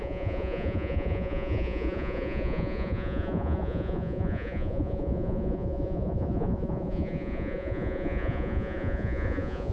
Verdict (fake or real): fake